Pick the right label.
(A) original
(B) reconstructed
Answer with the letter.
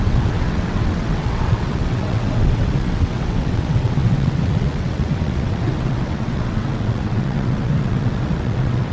B